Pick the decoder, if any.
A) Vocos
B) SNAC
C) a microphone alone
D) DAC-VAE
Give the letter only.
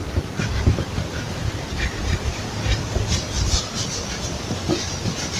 C